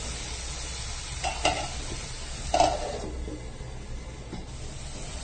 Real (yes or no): yes